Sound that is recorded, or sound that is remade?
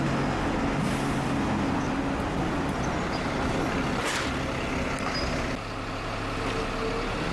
recorded